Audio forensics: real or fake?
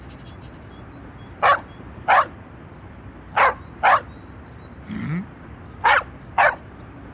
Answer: real